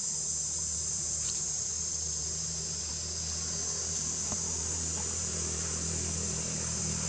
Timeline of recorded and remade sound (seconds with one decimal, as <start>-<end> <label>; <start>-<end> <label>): 0.0-2.9 remade; 2.9-3.8 recorded; 3.8-7.1 remade